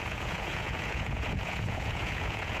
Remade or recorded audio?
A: remade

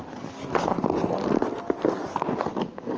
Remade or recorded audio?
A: recorded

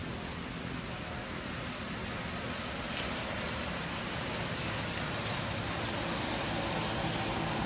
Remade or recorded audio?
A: recorded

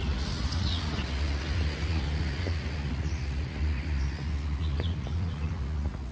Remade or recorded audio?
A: remade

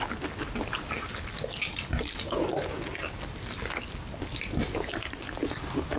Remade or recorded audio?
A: recorded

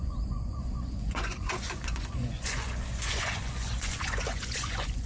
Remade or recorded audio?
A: remade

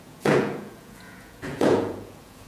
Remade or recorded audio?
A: remade